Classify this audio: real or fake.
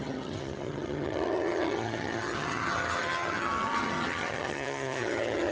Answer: fake